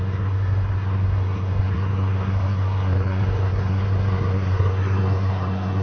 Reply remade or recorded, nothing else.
remade